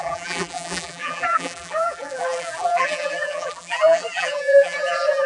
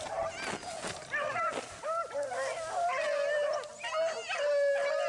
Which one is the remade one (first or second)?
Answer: first